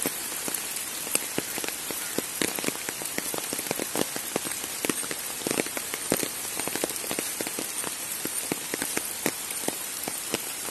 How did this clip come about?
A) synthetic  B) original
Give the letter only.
A